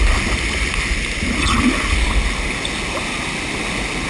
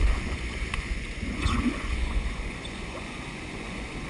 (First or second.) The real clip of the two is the first